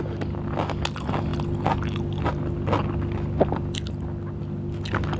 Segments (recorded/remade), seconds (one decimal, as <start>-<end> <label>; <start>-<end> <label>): 0.0-5.2 recorded